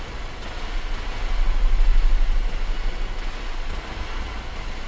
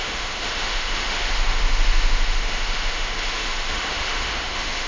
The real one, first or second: first